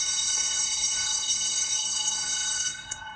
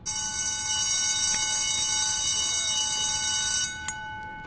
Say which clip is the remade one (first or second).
first